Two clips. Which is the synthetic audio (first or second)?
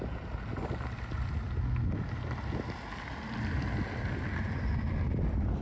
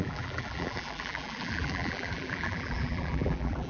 second